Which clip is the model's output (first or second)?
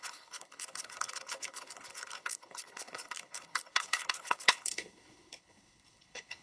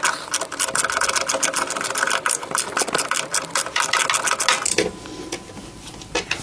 first